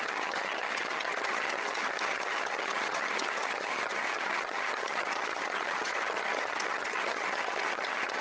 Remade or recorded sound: remade